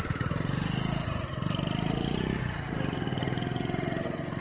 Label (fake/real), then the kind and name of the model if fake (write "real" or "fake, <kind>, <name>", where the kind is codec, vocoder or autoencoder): real